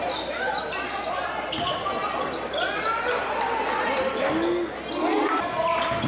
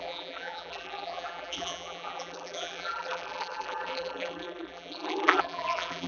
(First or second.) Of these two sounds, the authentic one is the first